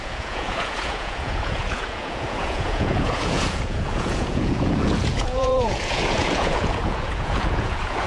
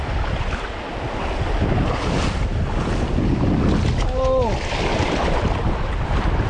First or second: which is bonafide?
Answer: second